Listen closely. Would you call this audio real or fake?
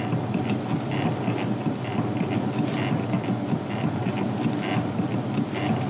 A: real